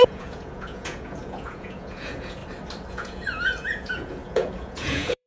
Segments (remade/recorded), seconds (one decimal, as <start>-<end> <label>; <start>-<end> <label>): 0.0-2.4 remade; 2.4-2.9 recorded; 2.9-5.3 remade